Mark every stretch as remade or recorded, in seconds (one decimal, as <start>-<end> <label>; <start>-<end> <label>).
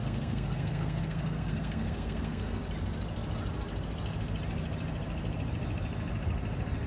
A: 0.0-2.6 remade; 2.6-6.9 recorded